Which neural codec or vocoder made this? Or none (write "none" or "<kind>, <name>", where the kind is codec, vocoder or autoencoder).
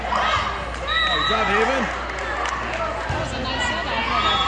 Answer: none